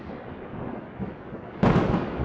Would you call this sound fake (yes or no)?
yes